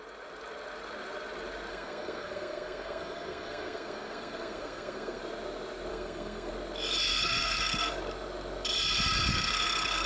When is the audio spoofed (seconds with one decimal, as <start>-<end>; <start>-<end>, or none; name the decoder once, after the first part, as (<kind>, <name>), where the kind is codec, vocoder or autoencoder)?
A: 1.7-5.2 (codec, SNAC); 5.9-6.5; 7.1-7.9; 9.3-10.1